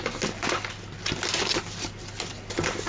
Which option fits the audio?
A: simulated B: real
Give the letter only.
B